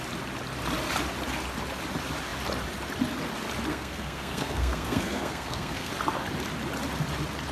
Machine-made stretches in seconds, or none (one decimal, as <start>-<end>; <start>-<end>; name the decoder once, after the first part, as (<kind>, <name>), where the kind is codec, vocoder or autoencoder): 3.7-5.9 (codec, SNAC)